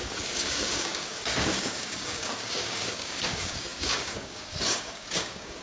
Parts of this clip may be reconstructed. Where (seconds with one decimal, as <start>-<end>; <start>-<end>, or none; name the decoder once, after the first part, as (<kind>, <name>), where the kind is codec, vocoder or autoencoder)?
0.0-5.6 (codec, DAC)